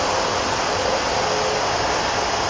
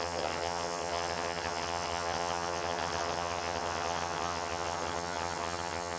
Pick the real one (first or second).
first